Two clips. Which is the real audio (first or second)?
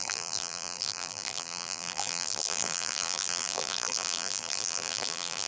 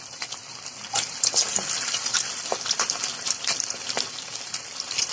second